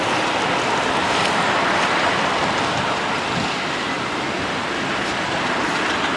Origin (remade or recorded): recorded